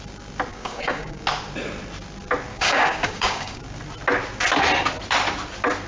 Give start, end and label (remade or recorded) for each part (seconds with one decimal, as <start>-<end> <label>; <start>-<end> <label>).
0.0-0.5 recorded; 0.5-1.2 remade; 1.2-2.5 recorded; 2.5-3.6 remade; 3.6-5.9 recorded